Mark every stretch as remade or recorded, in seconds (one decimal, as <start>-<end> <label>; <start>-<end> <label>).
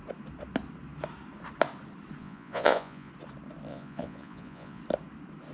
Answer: 0.0-2.2 recorded; 2.2-3.1 remade; 3.1-3.7 recorded; 3.7-4.8 remade; 4.8-5.5 recorded